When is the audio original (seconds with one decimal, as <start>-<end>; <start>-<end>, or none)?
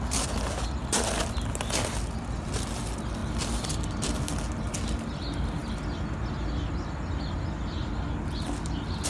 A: 0.0-9.1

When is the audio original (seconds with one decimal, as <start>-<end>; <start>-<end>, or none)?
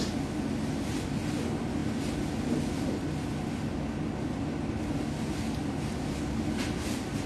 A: 0.0-7.3